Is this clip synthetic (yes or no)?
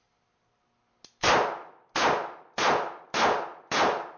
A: no